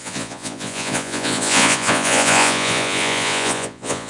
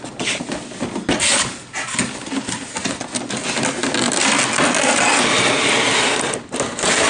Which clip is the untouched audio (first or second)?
second